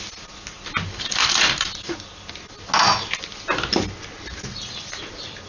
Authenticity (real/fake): real